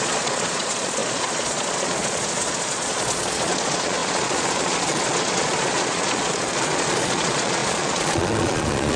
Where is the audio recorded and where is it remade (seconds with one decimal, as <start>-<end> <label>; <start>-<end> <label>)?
0.0-9.0 remade